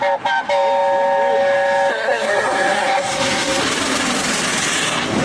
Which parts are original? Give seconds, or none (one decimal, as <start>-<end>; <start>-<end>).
0.0-1.9; 3.6-5.2